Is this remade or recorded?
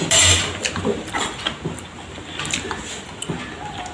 recorded